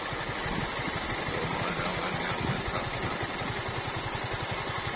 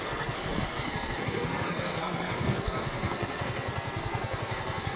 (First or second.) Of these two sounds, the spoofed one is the second